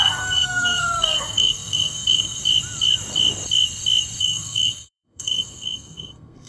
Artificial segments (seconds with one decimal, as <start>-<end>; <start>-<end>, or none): 0.0-2.4; 4.2-6.5